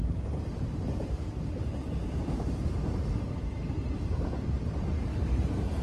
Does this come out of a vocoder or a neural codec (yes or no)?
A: yes